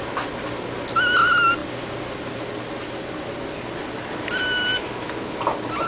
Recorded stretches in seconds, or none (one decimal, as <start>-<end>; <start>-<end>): 0.0-5.9

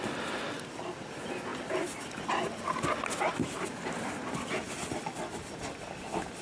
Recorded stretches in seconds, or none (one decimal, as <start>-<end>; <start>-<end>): 0.0-6.4

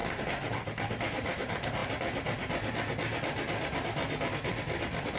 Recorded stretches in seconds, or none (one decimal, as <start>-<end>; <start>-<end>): 0.0-5.2

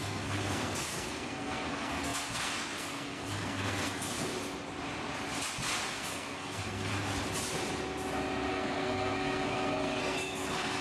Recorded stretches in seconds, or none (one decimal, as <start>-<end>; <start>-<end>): 4.3-5.9; 6.9-8.5

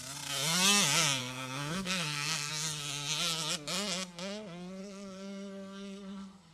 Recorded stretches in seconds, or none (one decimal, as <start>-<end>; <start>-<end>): 0.0-1.2; 2.5-4.8

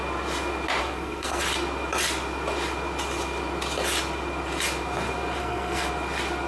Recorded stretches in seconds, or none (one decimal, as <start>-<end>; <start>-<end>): 0.0-0.8; 1.4-5.4; 5.9-6.5

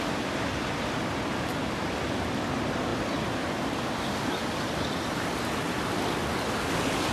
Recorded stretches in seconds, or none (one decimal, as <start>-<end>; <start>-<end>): 0.0-7.1